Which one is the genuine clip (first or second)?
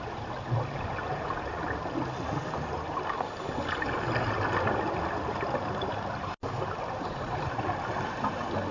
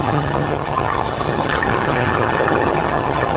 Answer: first